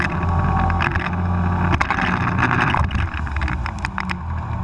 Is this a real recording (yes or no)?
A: yes